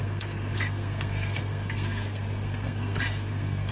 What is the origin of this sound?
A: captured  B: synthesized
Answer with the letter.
B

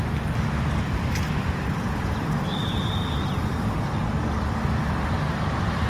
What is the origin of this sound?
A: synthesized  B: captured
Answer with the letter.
B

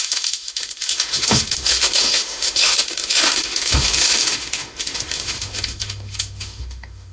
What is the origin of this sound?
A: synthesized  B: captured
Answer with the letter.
A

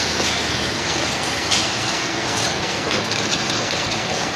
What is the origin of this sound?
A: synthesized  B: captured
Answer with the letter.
A